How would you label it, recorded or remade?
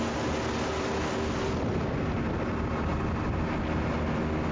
recorded